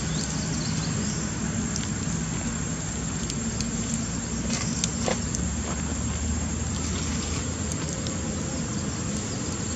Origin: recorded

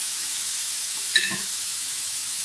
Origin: remade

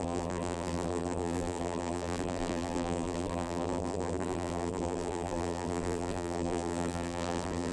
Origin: remade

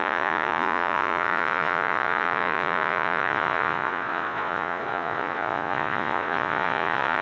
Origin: remade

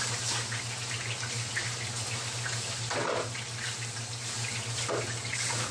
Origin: recorded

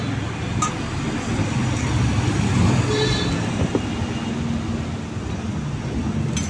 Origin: recorded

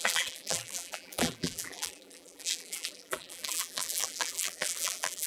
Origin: remade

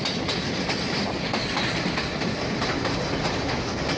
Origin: recorded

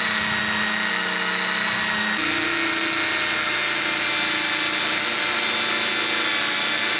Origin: recorded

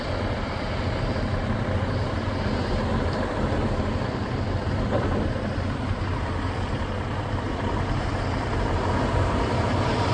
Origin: remade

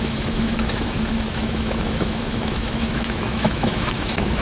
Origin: remade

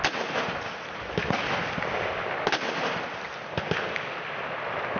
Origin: recorded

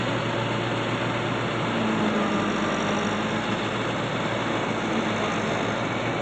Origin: recorded